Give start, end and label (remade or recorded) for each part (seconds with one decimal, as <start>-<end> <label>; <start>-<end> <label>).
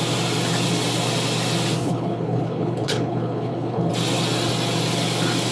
0.0-1.8 recorded; 1.8-3.9 remade; 3.9-5.5 recorded